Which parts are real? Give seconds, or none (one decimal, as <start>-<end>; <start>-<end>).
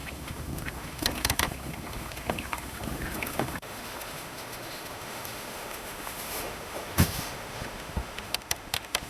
none